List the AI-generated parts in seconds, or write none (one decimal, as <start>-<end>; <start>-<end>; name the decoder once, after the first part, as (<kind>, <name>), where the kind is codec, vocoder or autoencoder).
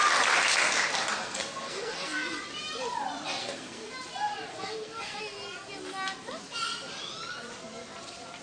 1.2-2.4 (codec, SNAC); 3.4-3.9; 4.5-5.2